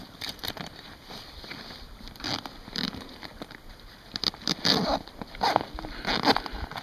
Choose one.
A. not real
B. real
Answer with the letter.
B